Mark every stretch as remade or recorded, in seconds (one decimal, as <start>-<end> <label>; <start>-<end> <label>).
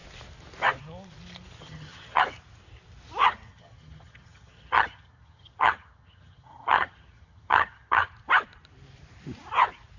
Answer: 0.0-1.6 recorded; 1.6-2.2 remade; 2.2-3.5 recorded; 3.5-8.1 remade; 8.1-10.0 recorded